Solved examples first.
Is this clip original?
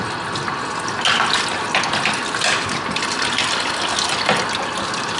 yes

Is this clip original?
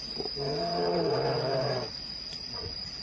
no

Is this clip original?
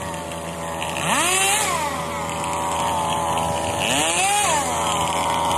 yes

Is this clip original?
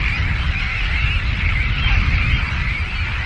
yes